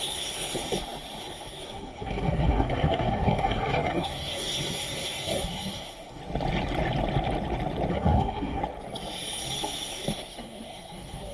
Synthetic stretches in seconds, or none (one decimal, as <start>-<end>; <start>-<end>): 0.0-0.6; 1.2-6.2; 7.9-8.6; 9.9-11.3